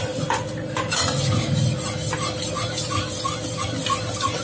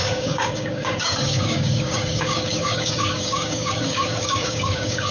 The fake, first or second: second